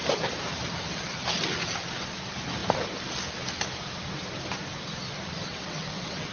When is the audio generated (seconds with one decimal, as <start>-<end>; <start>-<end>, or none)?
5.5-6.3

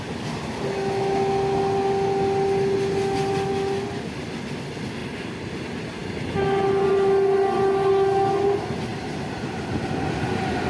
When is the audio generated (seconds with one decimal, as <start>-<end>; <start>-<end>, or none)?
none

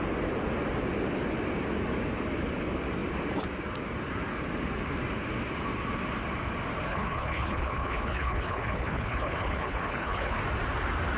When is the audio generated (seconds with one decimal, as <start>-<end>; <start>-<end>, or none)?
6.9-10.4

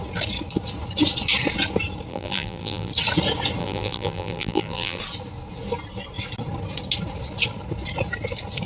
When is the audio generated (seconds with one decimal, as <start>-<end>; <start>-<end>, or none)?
2.1-2.9; 3.6-5.0

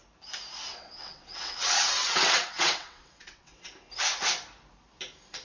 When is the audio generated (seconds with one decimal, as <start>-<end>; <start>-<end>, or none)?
0.7-3.7